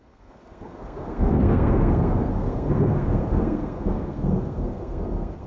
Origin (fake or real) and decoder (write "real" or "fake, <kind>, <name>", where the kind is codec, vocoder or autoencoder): fake, codec, SNAC